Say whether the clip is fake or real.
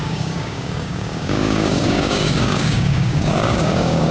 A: fake